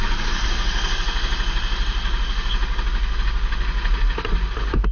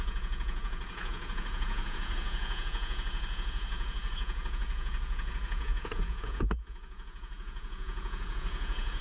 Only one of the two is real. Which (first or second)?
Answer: first